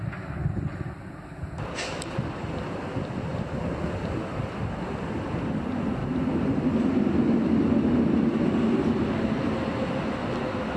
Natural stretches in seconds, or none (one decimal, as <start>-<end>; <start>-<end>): 0.0-10.8